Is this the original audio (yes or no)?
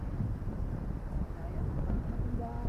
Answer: yes